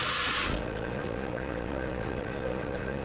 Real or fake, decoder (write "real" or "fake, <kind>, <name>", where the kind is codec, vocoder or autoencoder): fake, vocoder, Vocos